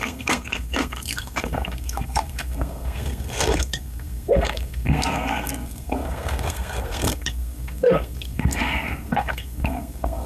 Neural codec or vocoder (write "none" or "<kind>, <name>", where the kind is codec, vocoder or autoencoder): codec, SNAC